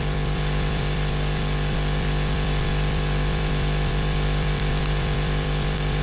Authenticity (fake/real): fake